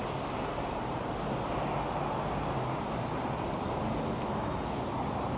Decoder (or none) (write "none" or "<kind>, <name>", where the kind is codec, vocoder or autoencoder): none